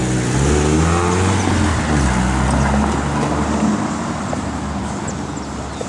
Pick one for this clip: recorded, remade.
recorded